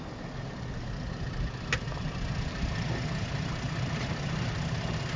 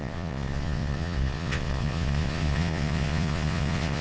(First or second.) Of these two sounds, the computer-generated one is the second